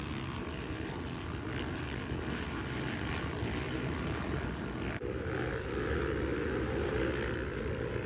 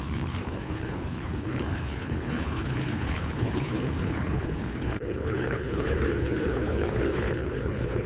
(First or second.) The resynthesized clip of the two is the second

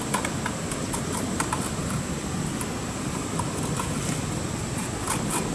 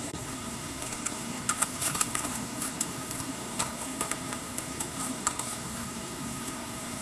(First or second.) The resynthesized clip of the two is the second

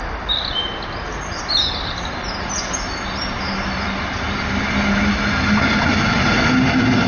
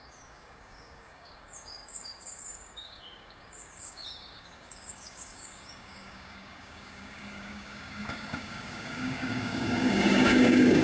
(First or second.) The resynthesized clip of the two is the second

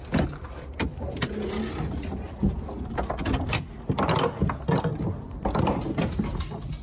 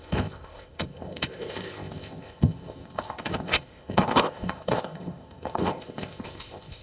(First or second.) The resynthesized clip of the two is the second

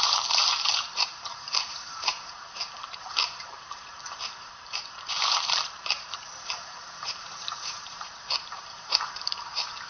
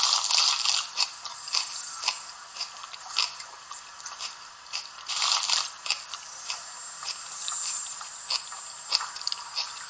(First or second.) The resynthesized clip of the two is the first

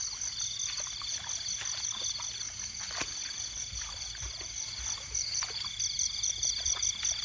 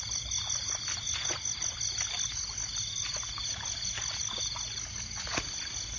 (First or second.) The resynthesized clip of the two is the first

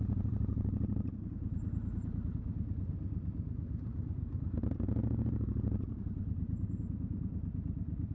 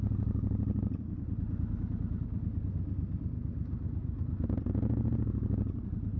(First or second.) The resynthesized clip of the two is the first